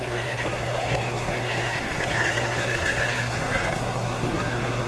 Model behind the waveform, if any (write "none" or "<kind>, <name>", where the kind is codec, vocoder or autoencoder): codec, SNAC